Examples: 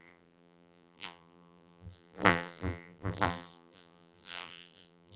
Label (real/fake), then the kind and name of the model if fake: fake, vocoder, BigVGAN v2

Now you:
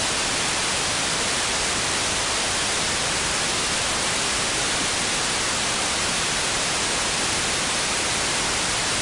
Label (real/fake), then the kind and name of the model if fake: real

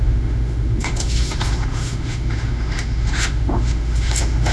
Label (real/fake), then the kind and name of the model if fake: fake, autoencoder, DAC-VAE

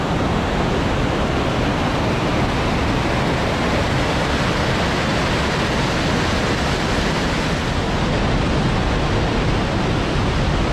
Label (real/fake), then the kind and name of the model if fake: real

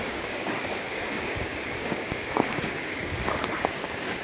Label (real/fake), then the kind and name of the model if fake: fake, codec, DAC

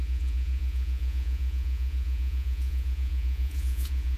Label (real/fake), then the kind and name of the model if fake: fake, vocoder, Vocos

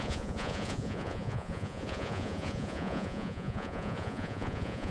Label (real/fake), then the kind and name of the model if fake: fake, vocoder, Vocos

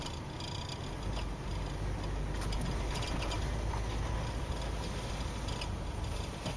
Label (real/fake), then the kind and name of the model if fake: real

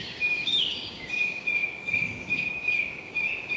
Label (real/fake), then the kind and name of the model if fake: fake, codec, DAC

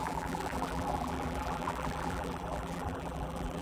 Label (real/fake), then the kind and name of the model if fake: fake, vocoder, BigVGAN v2